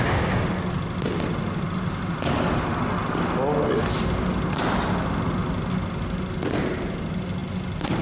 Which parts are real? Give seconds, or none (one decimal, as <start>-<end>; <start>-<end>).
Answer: 0.0-8.0